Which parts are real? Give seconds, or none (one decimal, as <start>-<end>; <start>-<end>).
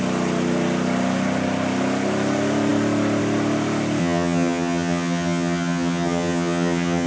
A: 0.0-4.0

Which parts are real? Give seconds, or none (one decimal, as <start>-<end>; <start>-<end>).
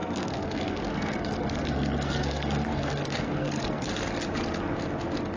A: 3.9-5.4